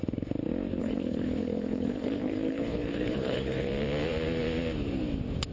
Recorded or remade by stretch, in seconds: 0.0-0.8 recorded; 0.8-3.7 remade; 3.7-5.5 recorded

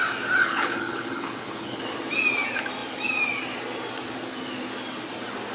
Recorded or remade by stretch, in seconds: 0.0-0.4 recorded; 0.4-1.8 remade; 1.8-5.5 recorded

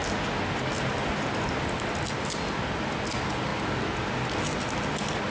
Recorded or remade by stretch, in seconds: 0.0-5.3 recorded

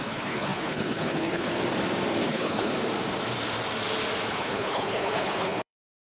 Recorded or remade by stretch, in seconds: 0.0-1.6 remade; 1.6-2.3 recorded; 2.3-2.7 remade; 2.7-4.3 recorded; 4.3-6.0 remade

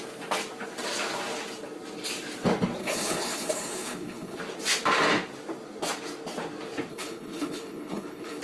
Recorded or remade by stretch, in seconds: 0.0-2.8 recorded; 2.8-4.4 remade; 4.4-6.9 recorded; 6.9-8.4 remade

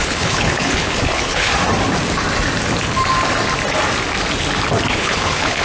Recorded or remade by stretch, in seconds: 0.0-1.5 remade; 1.5-4.9 recorded; 4.9-5.6 remade

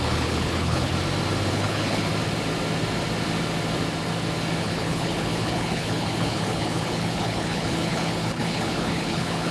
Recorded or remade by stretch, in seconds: 0.0-0.9 remade; 0.9-1.5 recorded; 1.5-2.1 remade; 2.1-4.6 recorded; 4.6-9.5 remade